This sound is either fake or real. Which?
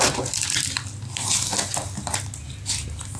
real